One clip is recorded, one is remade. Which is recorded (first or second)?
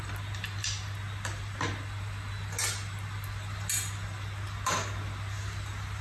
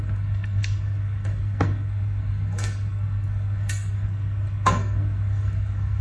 first